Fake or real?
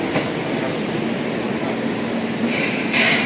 real